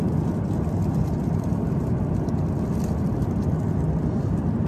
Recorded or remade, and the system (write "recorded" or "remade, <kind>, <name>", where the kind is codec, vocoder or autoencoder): recorded